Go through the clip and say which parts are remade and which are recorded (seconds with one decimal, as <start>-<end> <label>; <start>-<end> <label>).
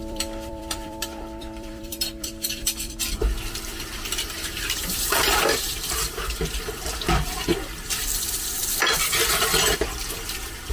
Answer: 0.0-7.5 remade; 7.5-10.7 recorded